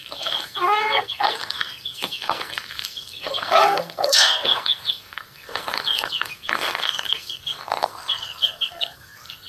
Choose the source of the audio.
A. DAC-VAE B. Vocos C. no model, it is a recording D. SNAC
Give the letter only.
D